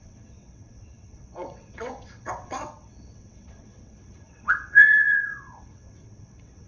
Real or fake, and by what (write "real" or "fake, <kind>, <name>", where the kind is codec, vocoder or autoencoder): fake, vocoder, WaveNeXt